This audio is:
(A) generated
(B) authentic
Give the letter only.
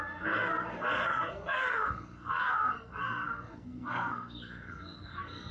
A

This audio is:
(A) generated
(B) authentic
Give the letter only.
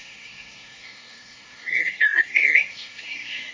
A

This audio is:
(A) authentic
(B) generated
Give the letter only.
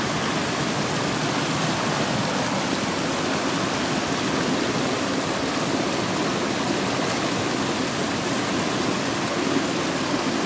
A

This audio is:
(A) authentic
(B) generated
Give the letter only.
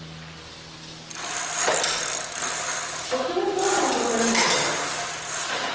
A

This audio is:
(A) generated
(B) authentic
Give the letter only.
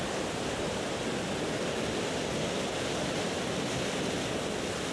B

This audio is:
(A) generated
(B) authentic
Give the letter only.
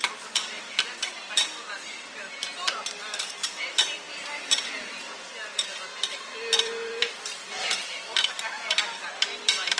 A